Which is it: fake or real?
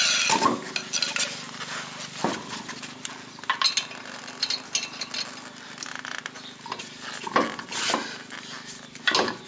real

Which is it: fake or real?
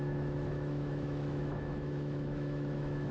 fake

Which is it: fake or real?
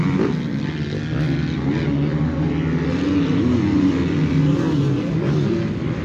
real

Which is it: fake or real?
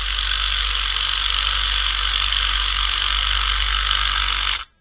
real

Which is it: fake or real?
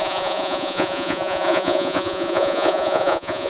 fake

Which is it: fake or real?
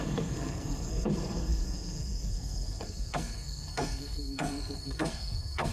fake